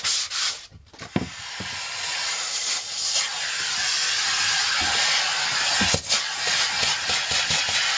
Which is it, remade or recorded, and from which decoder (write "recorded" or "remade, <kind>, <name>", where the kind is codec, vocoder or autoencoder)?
recorded